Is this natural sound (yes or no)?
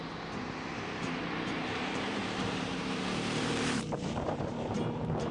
no